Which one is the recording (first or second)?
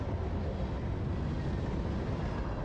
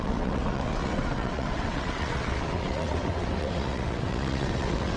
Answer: first